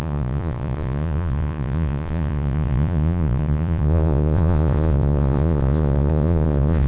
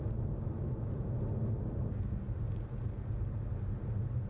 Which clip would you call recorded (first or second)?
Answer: second